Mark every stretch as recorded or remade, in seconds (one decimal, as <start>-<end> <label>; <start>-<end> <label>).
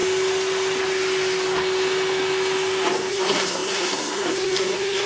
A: 0.0-3.1 recorded; 3.1-5.1 remade